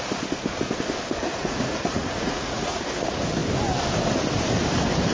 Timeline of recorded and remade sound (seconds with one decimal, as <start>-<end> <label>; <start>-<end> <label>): 0.0-1.4 recorded; 1.4-2.8 remade; 2.8-5.1 recorded